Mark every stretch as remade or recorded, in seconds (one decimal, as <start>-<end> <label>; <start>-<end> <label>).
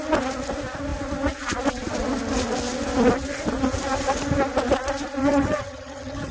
0.0-5.2 recorded; 5.2-6.3 remade